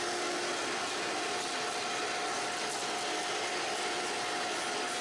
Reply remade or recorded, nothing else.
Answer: recorded